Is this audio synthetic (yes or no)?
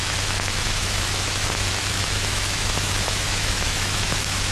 yes